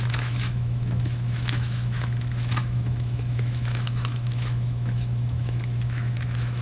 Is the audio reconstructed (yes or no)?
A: yes